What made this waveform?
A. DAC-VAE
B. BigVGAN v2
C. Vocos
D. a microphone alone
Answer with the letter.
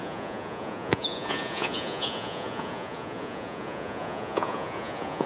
C